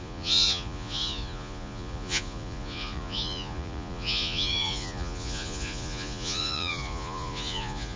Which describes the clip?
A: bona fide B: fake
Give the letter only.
B